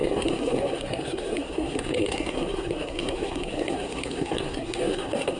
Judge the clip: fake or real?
fake